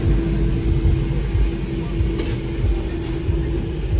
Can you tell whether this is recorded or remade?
recorded